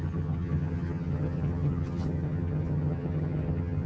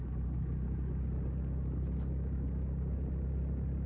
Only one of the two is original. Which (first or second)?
second